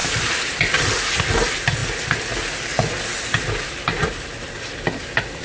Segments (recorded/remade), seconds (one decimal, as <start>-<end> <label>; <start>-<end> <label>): 0.0-1.2 remade; 1.2-5.4 recorded